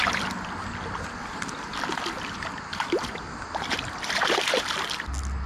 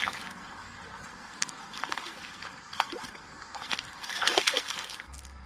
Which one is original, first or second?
first